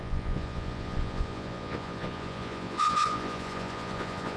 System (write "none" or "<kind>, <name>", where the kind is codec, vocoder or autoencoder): vocoder, Vocos